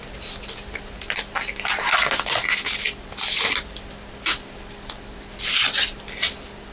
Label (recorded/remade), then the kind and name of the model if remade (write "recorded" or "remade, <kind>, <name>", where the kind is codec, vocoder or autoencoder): recorded